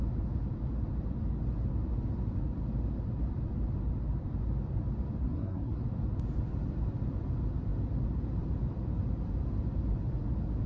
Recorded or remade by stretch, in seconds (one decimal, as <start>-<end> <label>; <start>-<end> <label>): 0.0-5.2 recorded; 5.2-5.8 remade; 5.8-10.7 recorded